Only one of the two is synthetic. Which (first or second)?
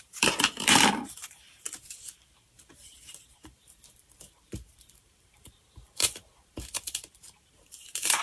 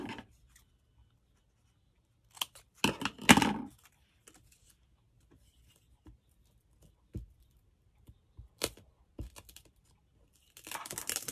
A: first